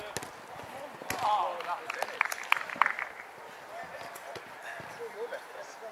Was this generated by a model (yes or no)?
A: no